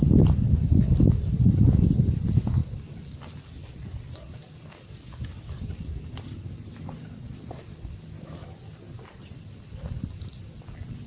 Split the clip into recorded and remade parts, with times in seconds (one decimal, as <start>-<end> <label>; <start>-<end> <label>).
0.0-11.1 recorded